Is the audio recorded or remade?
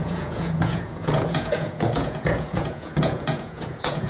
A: remade